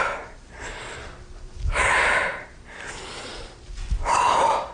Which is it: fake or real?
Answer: fake